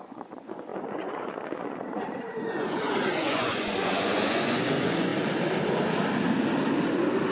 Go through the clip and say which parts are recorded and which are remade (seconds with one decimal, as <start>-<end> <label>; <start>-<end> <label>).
0.0-5.1 remade; 5.1-7.3 recorded